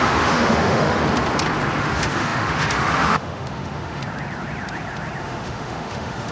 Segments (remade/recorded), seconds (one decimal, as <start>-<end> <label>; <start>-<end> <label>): 0.0-1.0 remade; 1.0-1.8 recorded; 1.8-4.0 remade; 4.0-5.2 recorded; 5.2-6.3 remade